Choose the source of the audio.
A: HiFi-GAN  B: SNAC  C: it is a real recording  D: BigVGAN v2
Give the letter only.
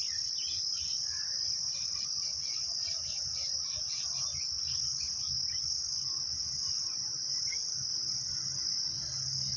C